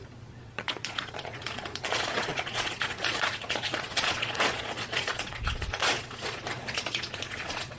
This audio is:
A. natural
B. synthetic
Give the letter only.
B